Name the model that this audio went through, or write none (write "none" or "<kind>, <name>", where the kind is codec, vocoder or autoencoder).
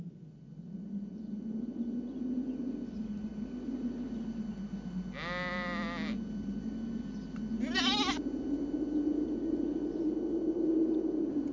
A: none